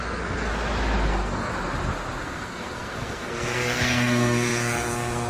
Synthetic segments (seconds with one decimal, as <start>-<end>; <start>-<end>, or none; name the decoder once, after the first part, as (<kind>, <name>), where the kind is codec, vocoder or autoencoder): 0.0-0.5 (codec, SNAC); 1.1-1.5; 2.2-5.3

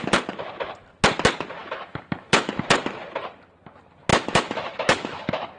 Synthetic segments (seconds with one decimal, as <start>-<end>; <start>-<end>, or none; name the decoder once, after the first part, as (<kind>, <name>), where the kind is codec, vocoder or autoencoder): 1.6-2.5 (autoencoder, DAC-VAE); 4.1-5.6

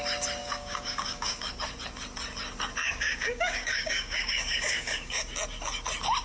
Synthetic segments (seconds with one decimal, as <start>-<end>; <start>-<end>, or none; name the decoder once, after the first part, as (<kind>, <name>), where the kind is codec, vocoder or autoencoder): 0.4-1.5 (codec, DAC); 2.8-5.2

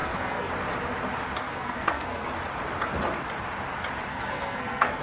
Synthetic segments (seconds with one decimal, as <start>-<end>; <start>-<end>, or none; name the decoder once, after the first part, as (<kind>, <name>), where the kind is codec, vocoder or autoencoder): 0.0-0.5 (codec, SNAC); 1.4-2.3; 4.1-5.0

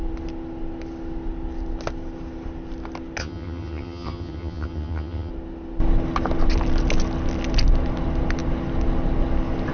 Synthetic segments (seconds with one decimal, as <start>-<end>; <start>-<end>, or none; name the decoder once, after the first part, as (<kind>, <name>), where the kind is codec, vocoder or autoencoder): 3.2-5.3 (vocoder, HiFi-GAN)

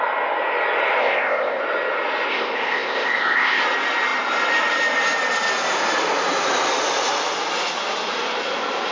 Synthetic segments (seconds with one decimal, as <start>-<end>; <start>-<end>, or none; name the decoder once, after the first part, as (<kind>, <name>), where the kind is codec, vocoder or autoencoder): 1.0-1.6 (codec, ZipCodec); 2.3-3.6